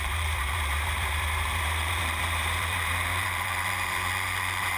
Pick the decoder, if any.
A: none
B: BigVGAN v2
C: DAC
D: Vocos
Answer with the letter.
B